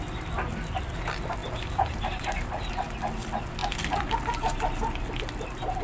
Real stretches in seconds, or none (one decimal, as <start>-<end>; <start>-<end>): 0.0-1.4; 2.7-5.8